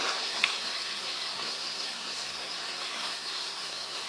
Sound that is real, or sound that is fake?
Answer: fake